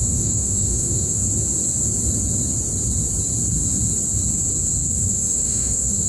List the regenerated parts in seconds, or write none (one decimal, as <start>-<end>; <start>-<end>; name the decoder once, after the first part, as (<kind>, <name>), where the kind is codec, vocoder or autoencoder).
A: 0.0-1.2 (autoencoder, DAC-VAE); 4.9-6.1